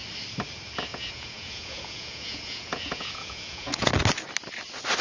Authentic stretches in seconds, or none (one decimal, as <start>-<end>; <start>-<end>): 0.0-0.9; 3.9-5.0